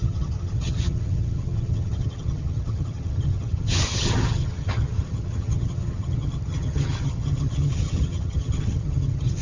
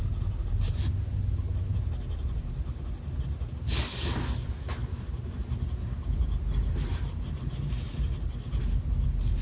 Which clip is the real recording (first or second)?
second